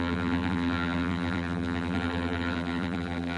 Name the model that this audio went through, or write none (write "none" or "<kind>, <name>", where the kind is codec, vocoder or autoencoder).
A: vocoder, BigVGAN v2